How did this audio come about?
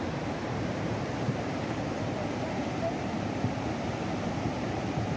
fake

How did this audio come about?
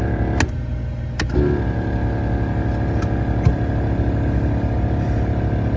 real